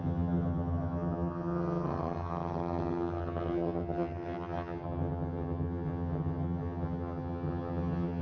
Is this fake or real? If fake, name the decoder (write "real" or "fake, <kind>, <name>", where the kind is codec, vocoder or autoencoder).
fake, vocoder, HiFi-GAN